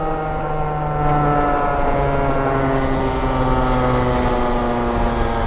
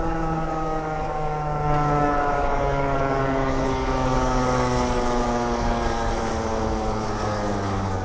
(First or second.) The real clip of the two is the first